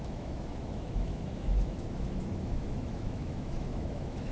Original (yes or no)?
no